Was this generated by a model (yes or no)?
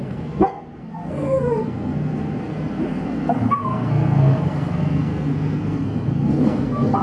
yes